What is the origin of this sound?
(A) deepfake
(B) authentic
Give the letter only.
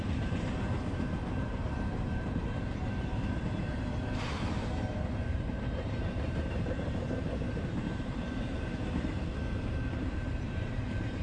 A